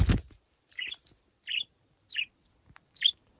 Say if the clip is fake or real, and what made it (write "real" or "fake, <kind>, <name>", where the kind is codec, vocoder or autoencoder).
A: fake, vocoder, BigVGAN v2